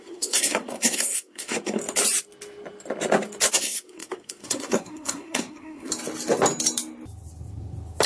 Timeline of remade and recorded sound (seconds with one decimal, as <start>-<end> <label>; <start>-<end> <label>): 0.0-1.8 remade; 1.8-3.5 recorded; 3.5-5.9 remade; 5.9-8.1 recorded

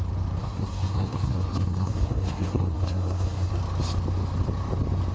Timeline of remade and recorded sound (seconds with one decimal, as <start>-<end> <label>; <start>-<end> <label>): 0.0-0.4 recorded; 0.4-3.5 remade; 3.5-5.1 recorded

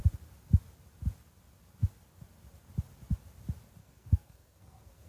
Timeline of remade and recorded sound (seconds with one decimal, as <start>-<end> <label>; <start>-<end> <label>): 0.0-3.8 recorded; 3.8-5.1 remade

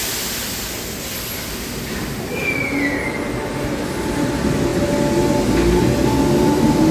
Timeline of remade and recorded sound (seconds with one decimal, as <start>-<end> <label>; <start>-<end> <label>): 0.0-6.9 recorded